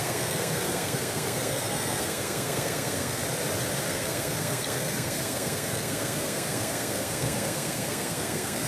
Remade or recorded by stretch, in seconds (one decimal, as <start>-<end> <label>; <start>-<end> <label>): 0.0-3.2 remade; 3.2-3.9 recorded; 3.9-8.7 remade